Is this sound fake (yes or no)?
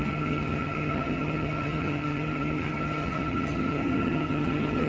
yes